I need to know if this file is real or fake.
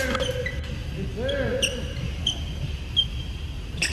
real